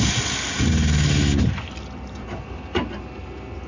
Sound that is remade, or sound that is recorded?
recorded